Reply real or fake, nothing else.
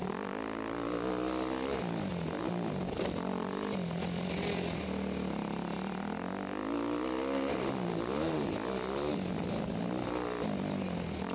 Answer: real